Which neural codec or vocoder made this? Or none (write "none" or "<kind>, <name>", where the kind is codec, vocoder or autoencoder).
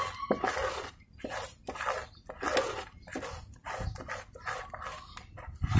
none